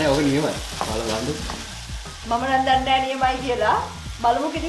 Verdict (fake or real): real